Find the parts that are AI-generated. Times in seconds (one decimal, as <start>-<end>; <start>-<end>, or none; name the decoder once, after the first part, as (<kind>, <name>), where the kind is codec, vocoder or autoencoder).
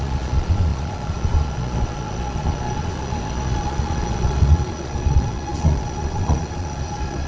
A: 0.0-7.3 (vocoder, Vocos)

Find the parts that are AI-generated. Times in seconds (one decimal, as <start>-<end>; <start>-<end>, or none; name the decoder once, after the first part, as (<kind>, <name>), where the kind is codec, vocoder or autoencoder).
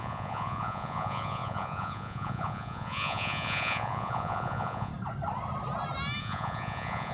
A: 0.0-4.9 (vocoder, Vocos); 6.2-7.1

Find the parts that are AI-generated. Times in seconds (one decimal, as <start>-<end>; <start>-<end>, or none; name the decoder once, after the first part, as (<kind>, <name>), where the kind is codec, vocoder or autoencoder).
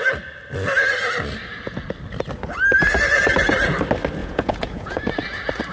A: 4.2-5.1 (vocoder, Vocos)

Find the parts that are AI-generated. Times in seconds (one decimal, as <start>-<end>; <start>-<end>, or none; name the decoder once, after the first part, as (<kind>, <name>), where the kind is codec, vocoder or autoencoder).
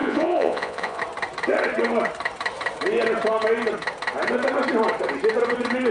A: 0.0-1.0 (vocoder, Vocos)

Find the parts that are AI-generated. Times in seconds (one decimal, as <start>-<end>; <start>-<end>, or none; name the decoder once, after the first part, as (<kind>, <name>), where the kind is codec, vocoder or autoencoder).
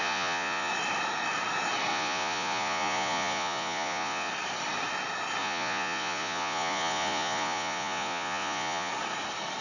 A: 0.0-0.7 (vocoder, Vocos); 1.9-4.3; 5.4-8.9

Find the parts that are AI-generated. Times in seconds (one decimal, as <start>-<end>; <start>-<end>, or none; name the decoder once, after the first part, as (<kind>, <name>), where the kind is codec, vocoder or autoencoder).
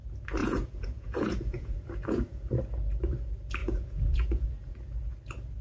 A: 0.4-2.6 (vocoder, Vocos); 3.6-4.9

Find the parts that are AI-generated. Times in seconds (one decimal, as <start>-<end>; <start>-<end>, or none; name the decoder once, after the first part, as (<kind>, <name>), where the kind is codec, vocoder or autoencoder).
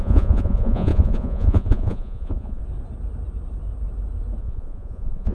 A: 0.0-2.6 (vocoder, Vocos); 4.4-5.3